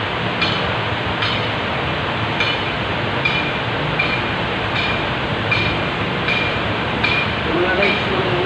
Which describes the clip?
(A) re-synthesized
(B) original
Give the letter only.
A